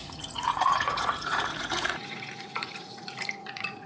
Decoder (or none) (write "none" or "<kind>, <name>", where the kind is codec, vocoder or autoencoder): vocoder, Vocos